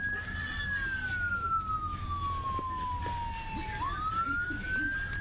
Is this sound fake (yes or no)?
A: no